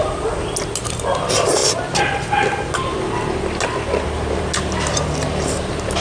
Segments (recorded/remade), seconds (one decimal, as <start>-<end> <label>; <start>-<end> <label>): 0.0-6.0 recorded